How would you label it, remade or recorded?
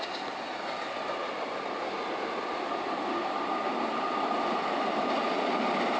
recorded